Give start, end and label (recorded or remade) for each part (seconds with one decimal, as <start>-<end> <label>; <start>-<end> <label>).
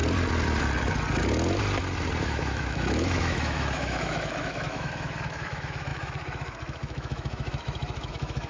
0.0-2.2 recorded; 2.2-8.5 remade